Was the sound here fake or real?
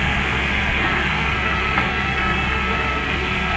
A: fake